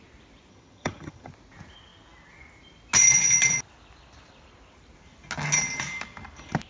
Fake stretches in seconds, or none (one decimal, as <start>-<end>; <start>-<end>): 0.5-1.3